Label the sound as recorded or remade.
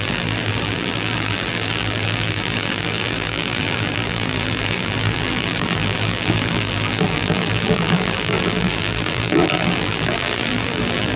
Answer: remade